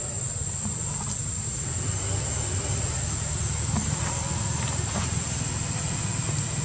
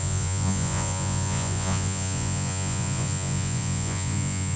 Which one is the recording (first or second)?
first